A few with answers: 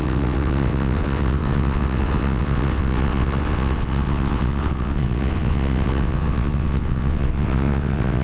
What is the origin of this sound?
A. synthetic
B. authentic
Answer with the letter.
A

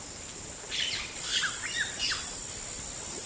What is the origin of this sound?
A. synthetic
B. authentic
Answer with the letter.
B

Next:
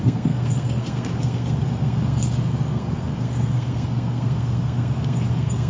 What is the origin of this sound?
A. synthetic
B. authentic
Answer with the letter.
A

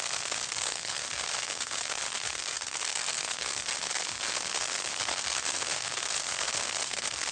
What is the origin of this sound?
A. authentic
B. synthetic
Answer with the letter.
B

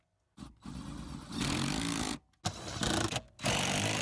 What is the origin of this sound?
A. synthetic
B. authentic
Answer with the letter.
B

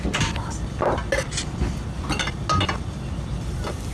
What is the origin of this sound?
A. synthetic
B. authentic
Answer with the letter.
B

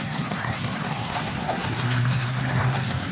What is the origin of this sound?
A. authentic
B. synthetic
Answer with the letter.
B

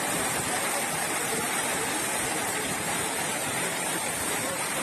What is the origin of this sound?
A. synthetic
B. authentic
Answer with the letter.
A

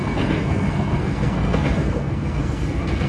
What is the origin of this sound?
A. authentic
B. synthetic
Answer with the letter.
B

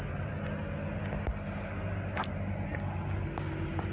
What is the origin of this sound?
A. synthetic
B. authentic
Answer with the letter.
B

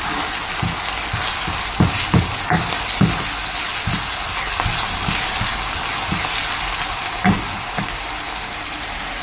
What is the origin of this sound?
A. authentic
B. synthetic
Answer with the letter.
A